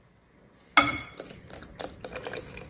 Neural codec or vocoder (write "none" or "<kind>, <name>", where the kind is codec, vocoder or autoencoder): none